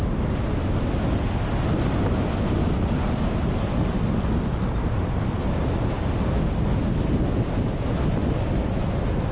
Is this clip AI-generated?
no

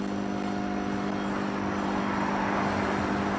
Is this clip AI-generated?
no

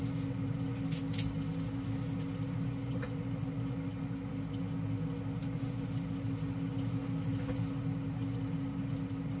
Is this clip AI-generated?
no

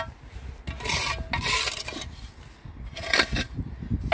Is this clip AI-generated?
no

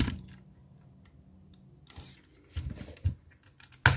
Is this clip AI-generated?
no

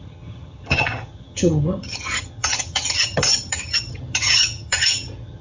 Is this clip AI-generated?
yes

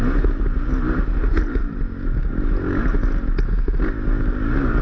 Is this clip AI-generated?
no